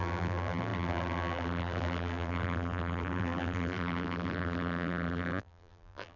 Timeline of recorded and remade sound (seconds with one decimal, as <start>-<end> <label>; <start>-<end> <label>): 0.0-6.2 remade